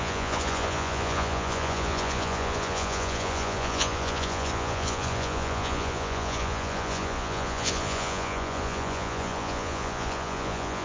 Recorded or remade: remade